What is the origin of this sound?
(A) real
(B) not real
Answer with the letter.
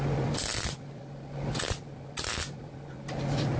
A